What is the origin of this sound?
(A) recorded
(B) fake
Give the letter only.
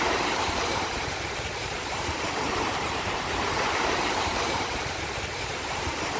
B